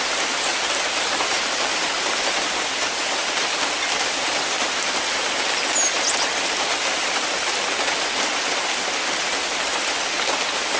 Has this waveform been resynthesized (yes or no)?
no